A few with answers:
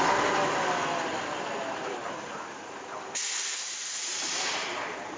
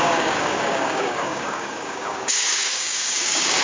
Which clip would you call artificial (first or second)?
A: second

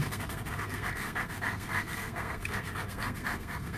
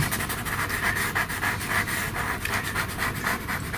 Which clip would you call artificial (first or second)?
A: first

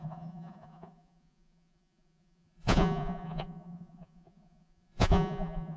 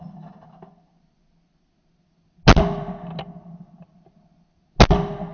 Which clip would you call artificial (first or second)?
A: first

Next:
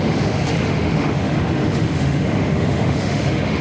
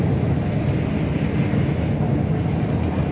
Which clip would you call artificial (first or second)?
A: first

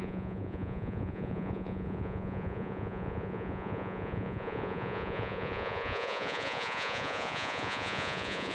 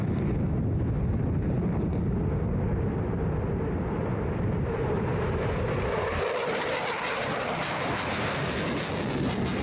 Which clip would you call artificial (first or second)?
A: first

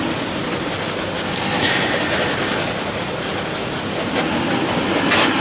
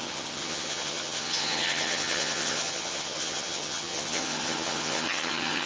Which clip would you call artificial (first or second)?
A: second